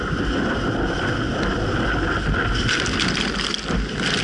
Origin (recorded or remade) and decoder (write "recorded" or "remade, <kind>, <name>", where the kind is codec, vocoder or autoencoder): recorded